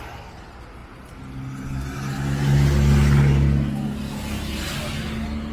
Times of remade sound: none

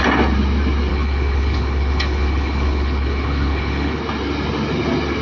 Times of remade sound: 0.9-4.0 (codec, HILCodec)

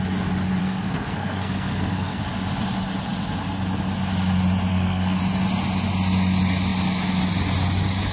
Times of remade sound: 0.6-2.2 (codec, SNAC); 4.7-5.2

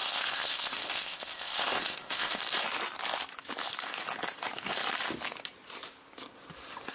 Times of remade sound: 0.0-2.4 (codec, ZipCodec)

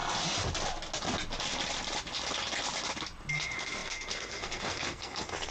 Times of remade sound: 3.3-5.5 (codec, SNAC)

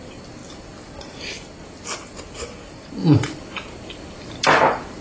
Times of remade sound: none

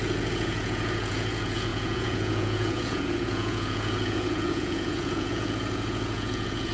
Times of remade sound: 0.0-6.7 (vocoder, Vocos)